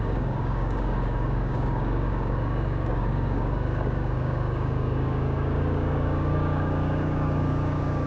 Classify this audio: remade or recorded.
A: remade